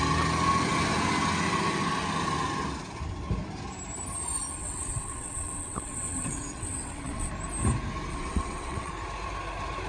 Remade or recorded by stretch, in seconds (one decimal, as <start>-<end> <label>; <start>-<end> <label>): 0.0-4.6 recorded; 4.6-7.3 remade; 7.3-8.1 recorded; 8.1-8.9 remade; 8.9-9.9 recorded